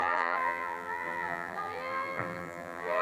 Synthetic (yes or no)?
yes